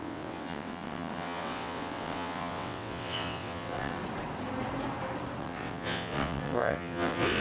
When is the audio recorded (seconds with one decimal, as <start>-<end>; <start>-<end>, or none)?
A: 4.0-5.4